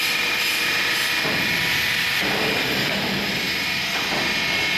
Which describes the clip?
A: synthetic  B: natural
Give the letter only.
B